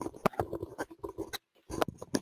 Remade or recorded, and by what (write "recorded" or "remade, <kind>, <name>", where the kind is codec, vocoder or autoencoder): recorded